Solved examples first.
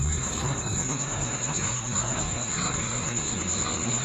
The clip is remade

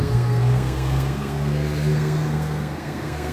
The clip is remade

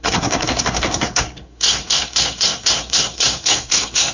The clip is remade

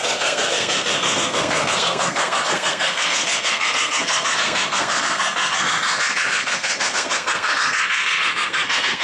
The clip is remade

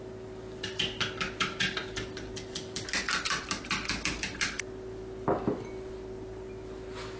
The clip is recorded